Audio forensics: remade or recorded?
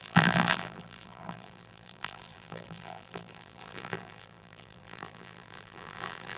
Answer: remade